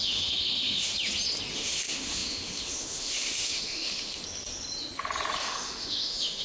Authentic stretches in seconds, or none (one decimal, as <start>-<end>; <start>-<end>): 0.9-1.5; 4.2-5.4